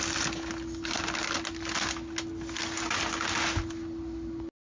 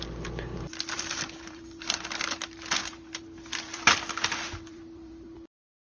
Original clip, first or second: first